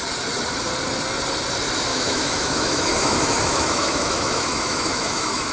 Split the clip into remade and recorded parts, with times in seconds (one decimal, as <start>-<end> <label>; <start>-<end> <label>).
0.0-1.9 recorded; 1.9-5.5 remade